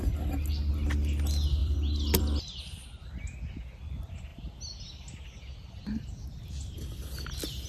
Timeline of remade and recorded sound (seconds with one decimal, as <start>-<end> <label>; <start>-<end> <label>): 0.0-1.6 recorded; 1.6-2.2 remade; 2.2-7.7 recorded